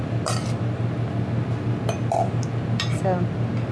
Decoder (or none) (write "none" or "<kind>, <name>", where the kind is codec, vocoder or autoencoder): none